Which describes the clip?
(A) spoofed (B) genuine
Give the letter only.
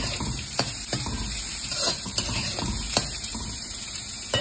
A